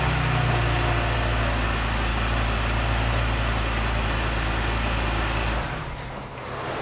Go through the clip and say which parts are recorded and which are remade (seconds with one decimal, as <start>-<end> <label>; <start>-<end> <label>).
0.0-6.8 recorded